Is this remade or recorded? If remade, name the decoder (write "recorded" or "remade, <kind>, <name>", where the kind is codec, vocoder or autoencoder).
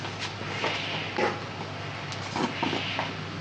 recorded